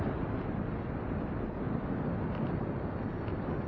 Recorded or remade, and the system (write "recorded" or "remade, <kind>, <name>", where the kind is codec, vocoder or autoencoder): recorded